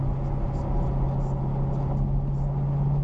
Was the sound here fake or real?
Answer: real